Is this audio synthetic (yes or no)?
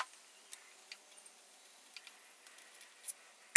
no